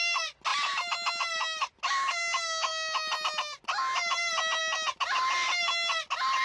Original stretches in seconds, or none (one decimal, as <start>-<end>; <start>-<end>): 0.0-6.4